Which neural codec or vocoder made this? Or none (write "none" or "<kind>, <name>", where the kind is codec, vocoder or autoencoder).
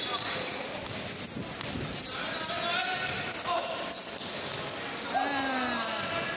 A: none